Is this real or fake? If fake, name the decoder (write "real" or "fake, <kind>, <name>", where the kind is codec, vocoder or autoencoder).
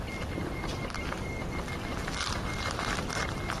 real